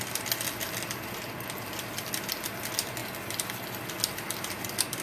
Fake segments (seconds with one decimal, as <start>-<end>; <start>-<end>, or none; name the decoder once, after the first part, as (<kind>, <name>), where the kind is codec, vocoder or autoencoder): 3.0-3.9 (vocoder, BigVGAN v2)

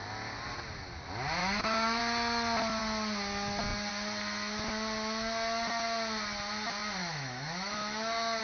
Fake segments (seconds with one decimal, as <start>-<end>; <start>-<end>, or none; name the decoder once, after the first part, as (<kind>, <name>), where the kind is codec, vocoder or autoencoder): 1.4-2.0 (autoencoder, DAC-VAE); 7.0-8.4

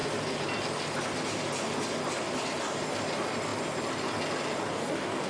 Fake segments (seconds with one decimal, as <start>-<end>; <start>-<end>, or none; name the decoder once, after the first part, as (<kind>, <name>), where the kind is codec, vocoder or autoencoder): 4.7-5.3 (codec, DAC)

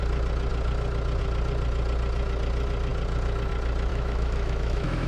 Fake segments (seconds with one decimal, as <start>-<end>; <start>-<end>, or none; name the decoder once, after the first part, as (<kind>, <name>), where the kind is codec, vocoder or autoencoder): 3.9-5.1 (autoencoder, DAC-VAE)

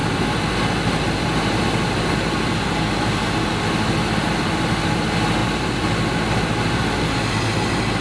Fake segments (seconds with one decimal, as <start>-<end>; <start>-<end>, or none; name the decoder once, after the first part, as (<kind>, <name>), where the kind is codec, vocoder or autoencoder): none